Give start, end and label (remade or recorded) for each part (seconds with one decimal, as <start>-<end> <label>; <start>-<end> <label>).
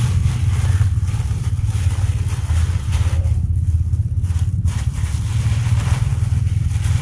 0.0-6.1 remade; 6.1-7.0 recorded